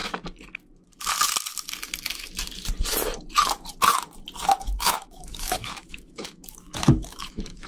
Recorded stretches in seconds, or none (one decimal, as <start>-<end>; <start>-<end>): 0.0-4.6